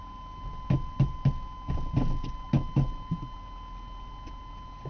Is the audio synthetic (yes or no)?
no